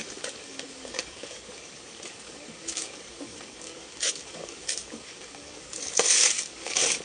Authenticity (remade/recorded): remade